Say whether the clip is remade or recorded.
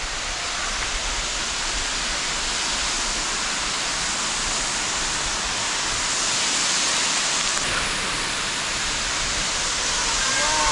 recorded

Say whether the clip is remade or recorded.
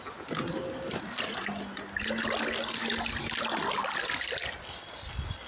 recorded